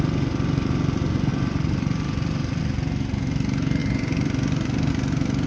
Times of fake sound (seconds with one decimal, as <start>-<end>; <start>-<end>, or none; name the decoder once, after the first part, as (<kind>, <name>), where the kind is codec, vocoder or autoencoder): 1.3-2.6 (vocoder, BigVGAN v2); 3.8-4.9